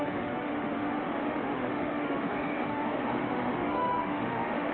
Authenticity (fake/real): fake